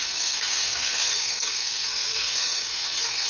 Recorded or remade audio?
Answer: remade